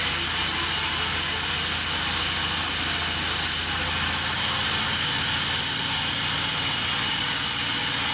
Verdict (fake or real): real